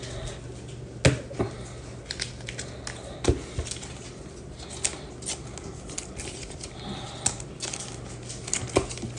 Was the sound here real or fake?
real